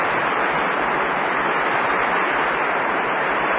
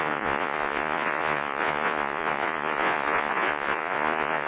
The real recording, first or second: first